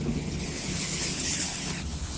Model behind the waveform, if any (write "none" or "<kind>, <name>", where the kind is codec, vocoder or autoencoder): codec, HILCodec